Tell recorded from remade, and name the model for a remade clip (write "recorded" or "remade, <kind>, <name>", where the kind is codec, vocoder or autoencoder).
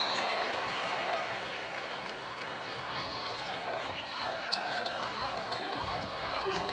remade, codec, SNAC